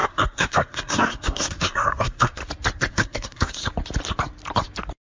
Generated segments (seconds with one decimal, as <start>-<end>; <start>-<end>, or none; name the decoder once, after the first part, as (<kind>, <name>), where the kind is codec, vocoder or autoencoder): 0.0-2.4 (codec, SNAC); 2.9-3.6